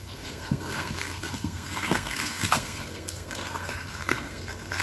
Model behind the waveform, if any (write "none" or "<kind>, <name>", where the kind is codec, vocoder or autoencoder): codec, SNAC